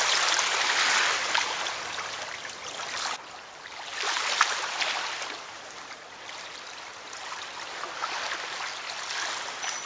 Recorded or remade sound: recorded